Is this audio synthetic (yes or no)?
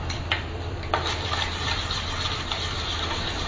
yes